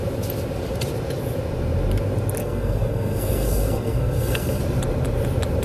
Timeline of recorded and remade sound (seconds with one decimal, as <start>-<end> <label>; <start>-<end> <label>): 0.0-2.4 recorded; 2.4-4.6 remade; 4.6-5.6 recorded